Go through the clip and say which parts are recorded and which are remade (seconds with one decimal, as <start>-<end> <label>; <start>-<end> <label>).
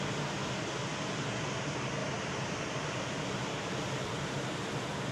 0.0-2.0 recorded; 2.0-5.1 remade